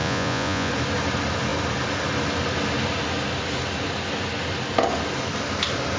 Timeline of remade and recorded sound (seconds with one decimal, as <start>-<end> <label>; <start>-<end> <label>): 0.0-0.7 remade; 0.7-6.0 recorded